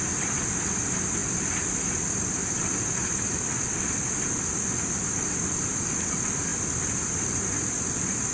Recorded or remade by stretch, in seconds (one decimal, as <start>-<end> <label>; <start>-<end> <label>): 0.0-8.3 recorded

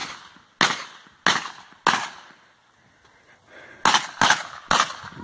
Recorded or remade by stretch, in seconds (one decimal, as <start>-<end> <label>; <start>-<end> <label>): 0.0-5.2 recorded

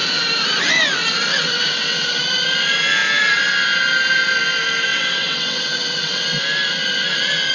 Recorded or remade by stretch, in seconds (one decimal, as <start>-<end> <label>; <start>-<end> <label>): 0.0-1.3 recorded; 1.3-2.2 remade; 2.2-4.9 recorded; 4.9-6.2 remade; 6.2-7.5 recorded

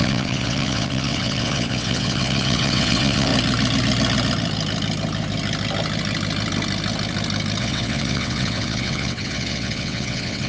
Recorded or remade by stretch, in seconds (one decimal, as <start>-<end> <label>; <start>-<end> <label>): 0.0-3.3 remade; 3.3-7.6 recorded; 7.6-10.5 remade

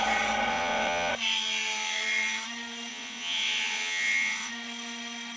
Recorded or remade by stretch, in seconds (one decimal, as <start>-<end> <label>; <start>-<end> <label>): 0.0-0.5 recorded; 0.5-1.1 remade; 1.1-2.9 recorded; 2.9-4.5 remade; 4.5-5.4 recorded